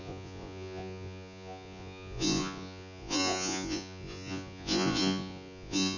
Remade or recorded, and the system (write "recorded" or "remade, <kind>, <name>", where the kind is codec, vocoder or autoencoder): remade, vocoder, Vocos